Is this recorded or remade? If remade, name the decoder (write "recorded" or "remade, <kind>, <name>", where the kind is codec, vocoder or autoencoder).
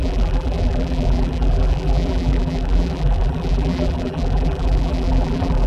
remade, vocoder, BigVGAN v2